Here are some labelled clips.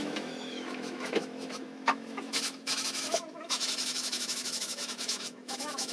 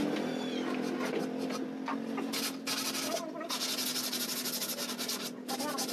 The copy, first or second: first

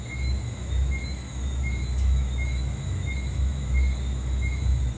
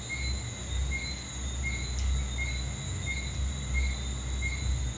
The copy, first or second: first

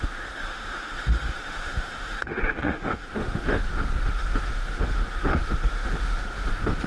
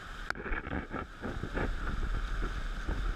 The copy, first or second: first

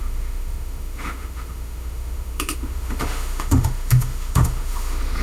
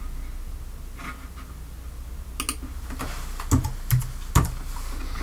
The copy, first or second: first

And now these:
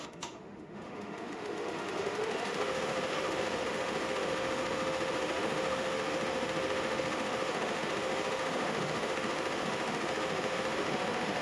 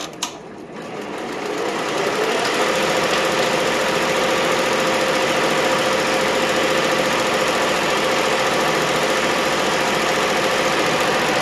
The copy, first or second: first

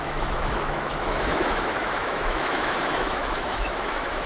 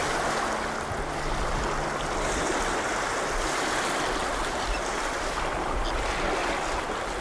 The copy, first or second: first